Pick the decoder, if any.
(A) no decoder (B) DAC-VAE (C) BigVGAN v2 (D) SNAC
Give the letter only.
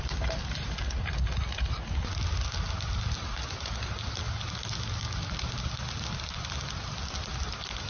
A